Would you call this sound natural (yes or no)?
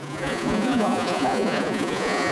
no